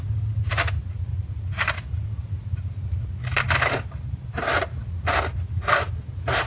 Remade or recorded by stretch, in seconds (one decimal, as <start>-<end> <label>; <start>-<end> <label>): 0.0-6.5 recorded